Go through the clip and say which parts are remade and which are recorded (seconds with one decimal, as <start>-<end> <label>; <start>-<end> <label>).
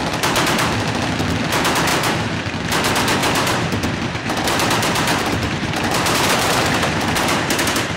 0.0-3.2 recorded; 3.2-8.0 remade